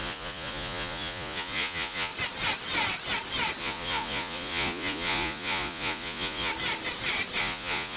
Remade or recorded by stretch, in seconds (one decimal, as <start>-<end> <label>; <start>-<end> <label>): 0.0-2.1 remade; 2.1-3.6 recorded; 3.6-6.5 remade; 6.5-7.4 recorded; 7.4-8.0 remade